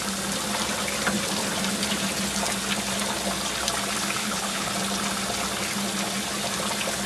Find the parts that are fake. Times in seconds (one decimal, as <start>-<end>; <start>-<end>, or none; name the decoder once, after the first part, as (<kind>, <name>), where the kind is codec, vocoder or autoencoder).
4.2-4.7 (codec, HILCodec)